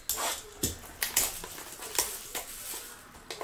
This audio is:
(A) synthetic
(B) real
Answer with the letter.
B